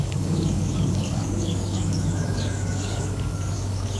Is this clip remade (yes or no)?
yes